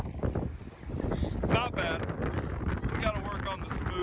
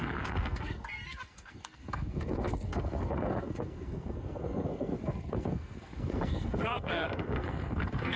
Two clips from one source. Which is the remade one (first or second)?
second